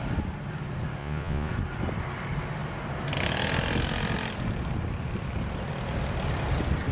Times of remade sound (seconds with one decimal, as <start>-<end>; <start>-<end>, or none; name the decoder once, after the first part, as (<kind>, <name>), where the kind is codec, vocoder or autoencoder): 1.0-1.5 (vocoder, Vocos)